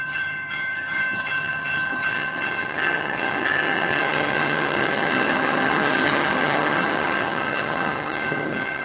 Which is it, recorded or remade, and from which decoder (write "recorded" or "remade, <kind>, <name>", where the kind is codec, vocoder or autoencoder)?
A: remade, vocoder, HiFi-GAN